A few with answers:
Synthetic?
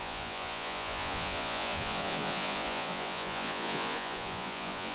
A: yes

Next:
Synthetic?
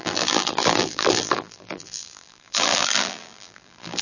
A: yes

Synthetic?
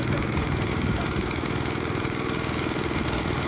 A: yes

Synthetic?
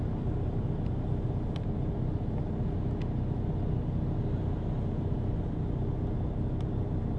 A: no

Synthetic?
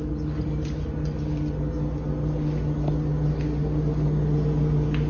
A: no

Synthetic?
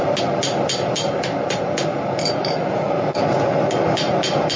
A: no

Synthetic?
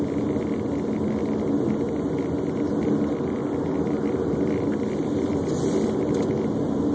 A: no